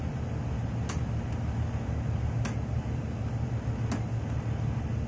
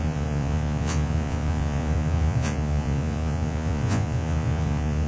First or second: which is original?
first